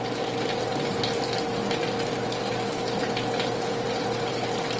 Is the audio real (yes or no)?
yes